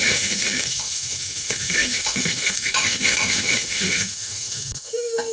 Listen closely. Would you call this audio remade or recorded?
remade